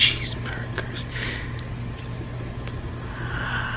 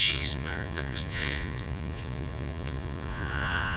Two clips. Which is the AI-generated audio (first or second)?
second